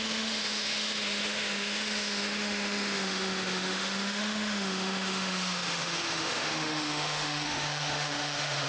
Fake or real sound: fake